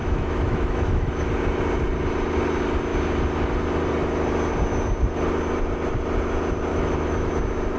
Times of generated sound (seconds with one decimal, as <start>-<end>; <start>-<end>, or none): 0.0-1.3; 6.7-7.3